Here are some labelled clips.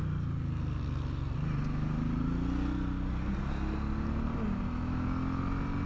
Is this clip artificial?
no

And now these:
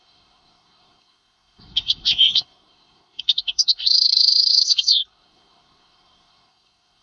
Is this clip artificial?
yes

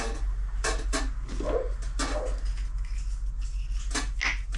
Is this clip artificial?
no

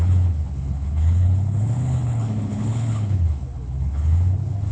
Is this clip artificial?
yes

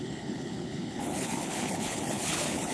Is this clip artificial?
yes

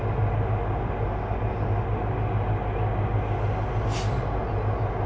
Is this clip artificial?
no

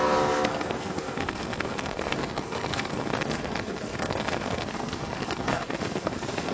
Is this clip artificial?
yes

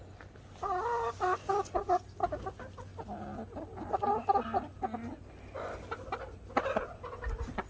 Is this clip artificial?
no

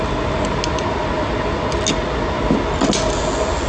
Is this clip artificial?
no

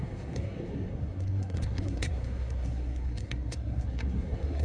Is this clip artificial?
yes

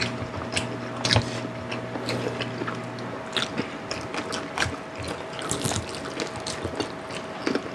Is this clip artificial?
no